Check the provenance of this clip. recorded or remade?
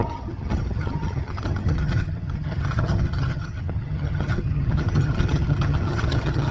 remade